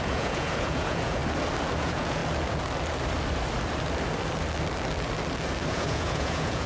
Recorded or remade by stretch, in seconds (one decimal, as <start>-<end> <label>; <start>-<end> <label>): 0.0-1.2 remade; 1.2-1.8 recorded; 1.8-2.2 remade; 2.2-5.7 recorded; 5.7-6.7 remade